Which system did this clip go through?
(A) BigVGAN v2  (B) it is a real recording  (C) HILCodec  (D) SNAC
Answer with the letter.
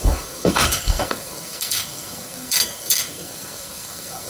D